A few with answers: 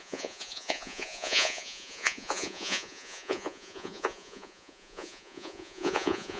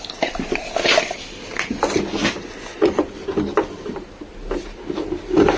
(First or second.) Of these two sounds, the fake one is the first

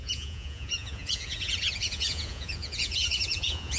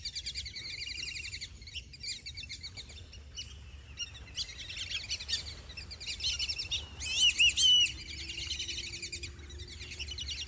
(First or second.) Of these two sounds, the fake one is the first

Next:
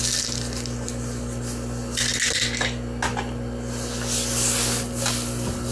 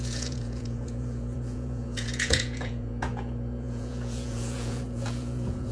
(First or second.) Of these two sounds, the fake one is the second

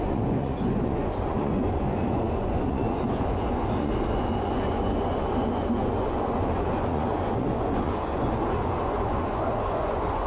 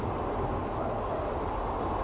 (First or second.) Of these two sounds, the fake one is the first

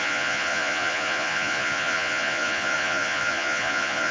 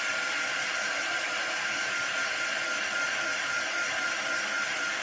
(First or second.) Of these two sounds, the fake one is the first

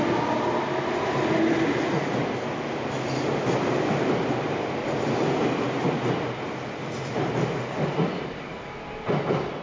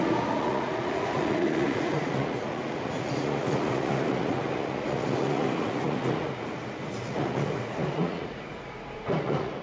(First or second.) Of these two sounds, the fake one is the second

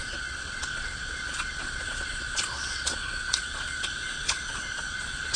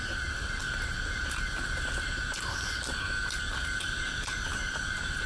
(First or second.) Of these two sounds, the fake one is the first